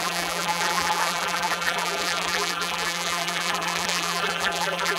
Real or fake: fake